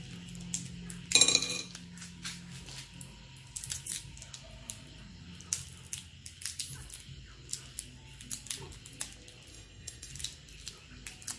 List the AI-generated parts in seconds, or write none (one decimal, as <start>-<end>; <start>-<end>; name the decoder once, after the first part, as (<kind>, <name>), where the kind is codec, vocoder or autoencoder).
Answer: 9.5-10.1 (codec, SNAC)